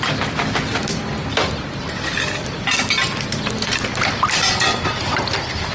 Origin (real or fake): real